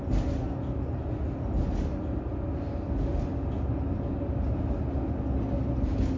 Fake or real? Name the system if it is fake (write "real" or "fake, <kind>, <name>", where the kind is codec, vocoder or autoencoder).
real